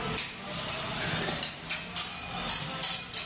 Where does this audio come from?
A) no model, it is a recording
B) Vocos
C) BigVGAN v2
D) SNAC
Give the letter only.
A